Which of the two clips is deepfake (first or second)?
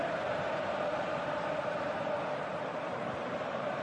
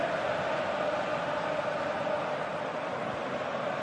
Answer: first